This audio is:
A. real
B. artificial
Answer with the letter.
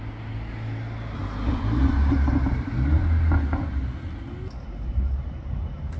A